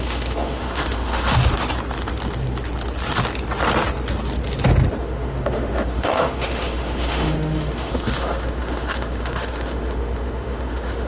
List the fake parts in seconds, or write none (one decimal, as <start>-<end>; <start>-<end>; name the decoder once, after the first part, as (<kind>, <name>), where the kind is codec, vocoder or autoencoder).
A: 0.0-1.4 (autoencoder, DAC-VAE); 5.0-11.1